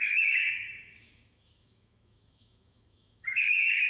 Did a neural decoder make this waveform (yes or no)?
yes